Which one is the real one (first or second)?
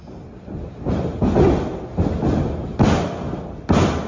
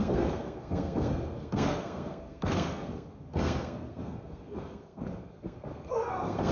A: first